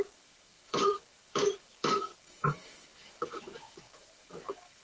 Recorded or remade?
remade